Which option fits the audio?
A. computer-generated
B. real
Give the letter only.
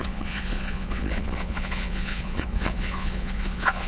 A